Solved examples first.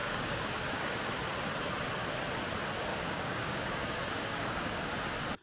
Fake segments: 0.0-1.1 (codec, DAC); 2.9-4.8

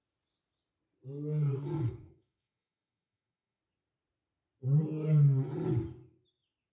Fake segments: 1.9-3.6 (codec, DAC)

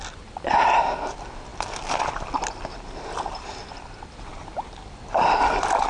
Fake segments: none

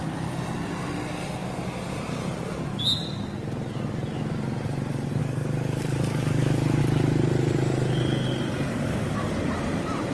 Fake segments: 5.2-6.8 (codec, DAC); 8.7-9.3

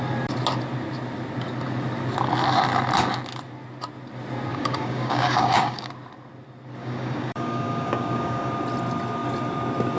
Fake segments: 4.5-5.9 (codec, DAC); 6.8-8.5

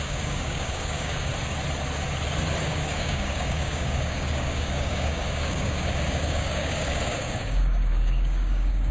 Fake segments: 0.0-1.3 (codec, DAC); 2.6-8.9

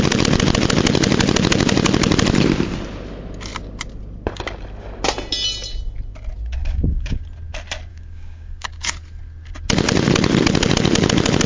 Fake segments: 6.6-7.2 (codec, DAC); 7.9-8.9